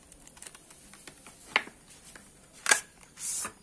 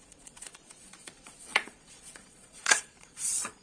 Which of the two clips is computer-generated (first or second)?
second